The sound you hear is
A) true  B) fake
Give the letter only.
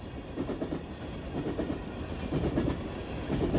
A